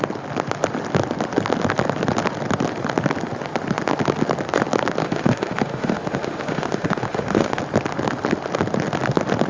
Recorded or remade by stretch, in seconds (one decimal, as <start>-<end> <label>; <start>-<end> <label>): 0.0-5.0 recorded; 5.0-7.6 remade; 7.6-9.5 recorded